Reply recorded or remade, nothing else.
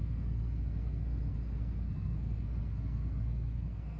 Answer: remade